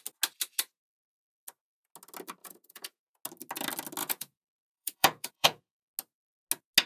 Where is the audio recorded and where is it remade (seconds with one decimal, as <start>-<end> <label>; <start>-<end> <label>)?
0.0-2.4 recorded; 2.4-3.0 remade; 3.0-4.0 recorded; 4.0-5.9 remade; 5.9-6.9 recorded